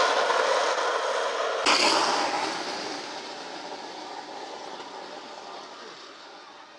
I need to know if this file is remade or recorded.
recorded